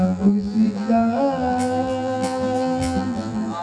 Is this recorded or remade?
remade